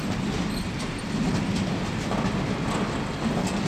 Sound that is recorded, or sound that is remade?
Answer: recorded